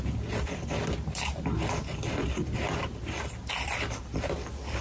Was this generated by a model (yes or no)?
no